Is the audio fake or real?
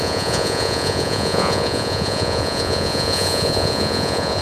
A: fake